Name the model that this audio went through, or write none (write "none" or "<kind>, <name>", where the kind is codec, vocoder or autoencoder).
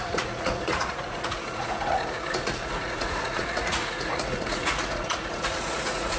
vocoder, Vocos